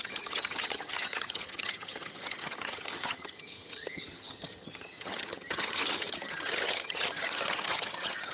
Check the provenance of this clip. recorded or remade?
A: remade